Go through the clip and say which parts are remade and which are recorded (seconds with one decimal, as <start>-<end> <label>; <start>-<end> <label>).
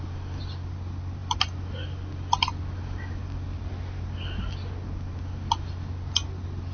0.0-6.7 recorded